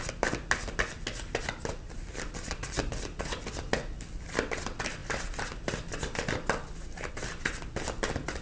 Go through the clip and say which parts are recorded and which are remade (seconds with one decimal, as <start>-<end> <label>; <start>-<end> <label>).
0.0-8.4 recorded